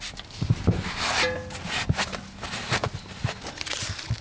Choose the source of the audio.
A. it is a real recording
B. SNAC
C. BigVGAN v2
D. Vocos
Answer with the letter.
A